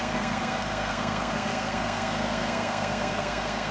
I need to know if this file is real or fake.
fake